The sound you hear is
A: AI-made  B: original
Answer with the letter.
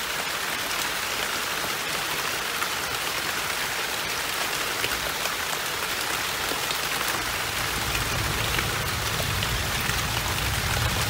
B